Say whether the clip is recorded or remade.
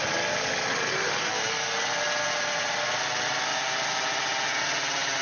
recorded